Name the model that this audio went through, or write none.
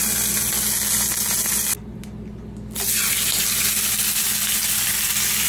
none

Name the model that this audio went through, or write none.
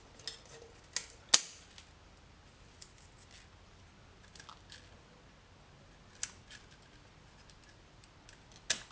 none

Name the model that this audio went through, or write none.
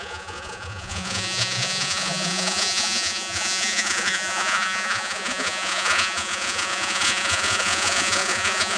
vocoder, Vocos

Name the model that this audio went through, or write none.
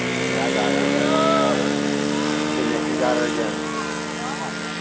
none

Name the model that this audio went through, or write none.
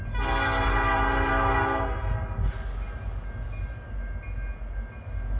none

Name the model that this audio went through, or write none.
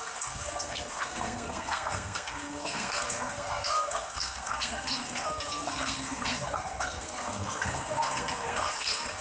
codec, SNAC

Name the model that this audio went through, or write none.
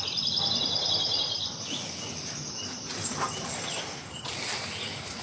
none